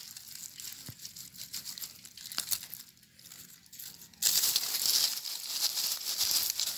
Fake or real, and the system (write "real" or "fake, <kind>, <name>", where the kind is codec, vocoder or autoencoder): real